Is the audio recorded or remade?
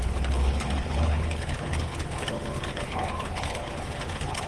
remade